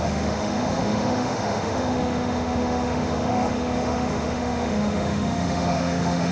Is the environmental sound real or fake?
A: fake